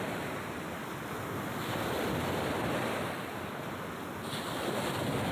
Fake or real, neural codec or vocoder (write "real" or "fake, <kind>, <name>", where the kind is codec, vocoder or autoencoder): real